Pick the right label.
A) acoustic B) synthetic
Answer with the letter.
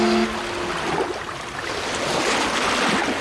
A